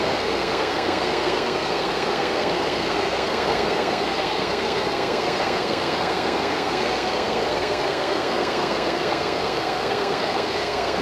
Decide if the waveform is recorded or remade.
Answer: remade